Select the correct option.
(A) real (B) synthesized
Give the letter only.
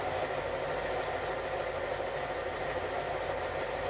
A